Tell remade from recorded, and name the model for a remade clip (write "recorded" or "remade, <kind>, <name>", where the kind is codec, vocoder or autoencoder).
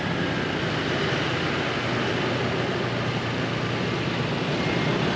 recorded